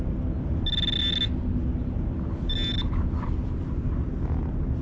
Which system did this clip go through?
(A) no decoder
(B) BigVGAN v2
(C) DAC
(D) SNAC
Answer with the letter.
A